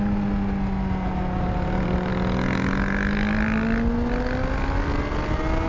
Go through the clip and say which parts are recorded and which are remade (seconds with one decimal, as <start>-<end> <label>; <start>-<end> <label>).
0.0-5.7 recorded